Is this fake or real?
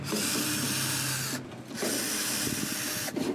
real